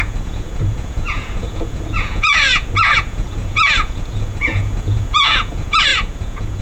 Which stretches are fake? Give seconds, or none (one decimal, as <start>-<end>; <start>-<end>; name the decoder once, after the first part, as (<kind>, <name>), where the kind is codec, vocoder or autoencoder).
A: 0.0-6.6 (vocoder, Vocos)